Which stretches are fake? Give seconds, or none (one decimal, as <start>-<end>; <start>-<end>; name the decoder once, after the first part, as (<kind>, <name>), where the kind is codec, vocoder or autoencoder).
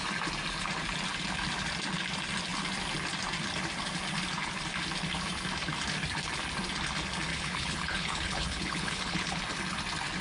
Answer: 7.3-9.4 (codec, HILCodec)